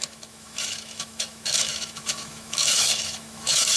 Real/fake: fake